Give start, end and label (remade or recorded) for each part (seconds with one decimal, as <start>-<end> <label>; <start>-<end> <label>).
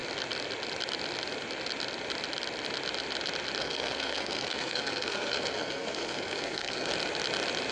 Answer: 0.0-3.6 recorded; 3.6-6.9 remade; 6.9-7.7 recorded